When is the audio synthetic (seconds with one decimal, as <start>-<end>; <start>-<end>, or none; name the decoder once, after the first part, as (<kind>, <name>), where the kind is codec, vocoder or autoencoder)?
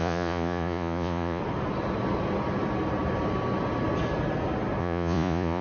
0.0-1.4 (vocoder, Vocos); 4.8-5.6